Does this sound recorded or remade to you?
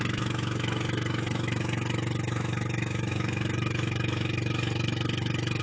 remade